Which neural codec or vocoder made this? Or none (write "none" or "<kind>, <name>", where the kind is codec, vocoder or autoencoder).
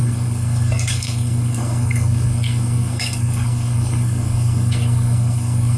codec, SNAC